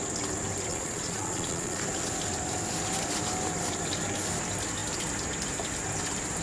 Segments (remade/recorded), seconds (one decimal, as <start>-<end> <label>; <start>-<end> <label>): 0.0-0.7 recorded; 0.7-1.8 remade; 1.8-6.4 recorded